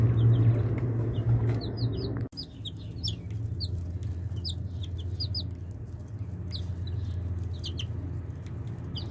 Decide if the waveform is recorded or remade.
recorded